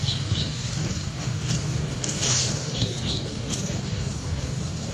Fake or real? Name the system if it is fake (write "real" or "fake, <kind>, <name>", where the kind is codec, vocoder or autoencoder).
fake, codec, DAC